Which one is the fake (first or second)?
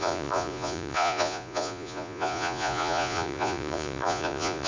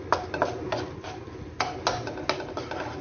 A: first